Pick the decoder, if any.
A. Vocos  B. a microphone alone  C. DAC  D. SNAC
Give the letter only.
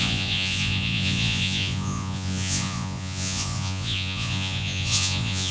A